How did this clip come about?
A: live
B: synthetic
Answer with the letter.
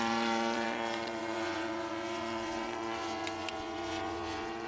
B